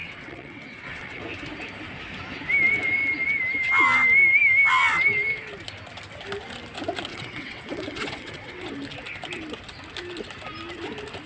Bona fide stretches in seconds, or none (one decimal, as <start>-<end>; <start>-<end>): 1.2-7.1; 8.7-11.3